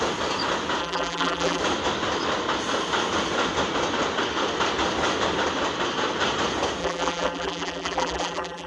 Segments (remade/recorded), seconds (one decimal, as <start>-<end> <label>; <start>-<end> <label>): 0.0-0.8 recorded; 0.8-1.6 remade; 1.6-6.8 recorded; 6.8-8.7 remade